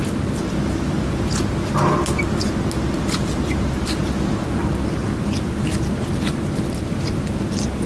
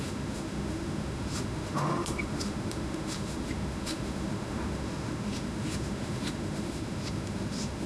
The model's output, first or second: second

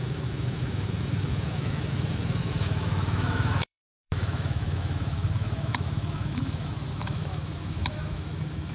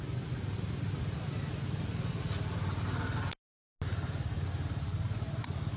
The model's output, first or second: first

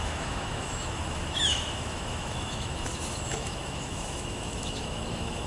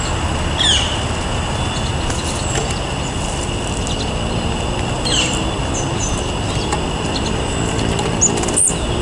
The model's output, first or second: first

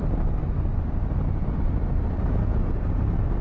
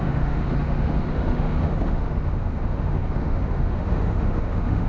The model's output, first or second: second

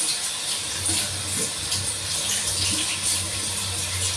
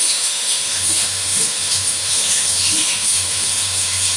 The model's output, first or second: second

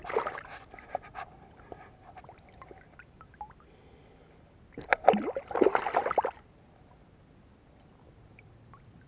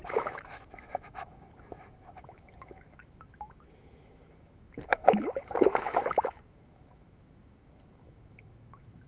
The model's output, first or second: second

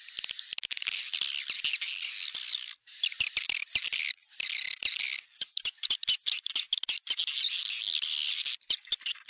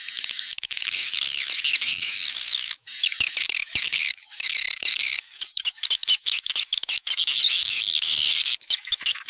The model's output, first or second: second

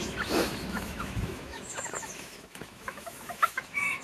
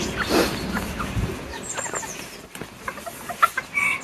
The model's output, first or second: first